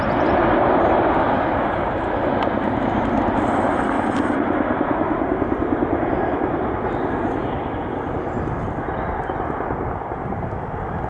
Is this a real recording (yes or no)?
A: yes